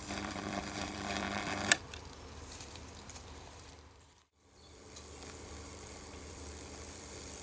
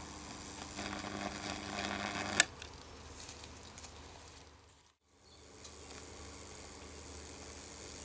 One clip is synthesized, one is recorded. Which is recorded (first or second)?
second